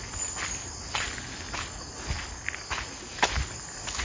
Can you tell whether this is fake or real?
real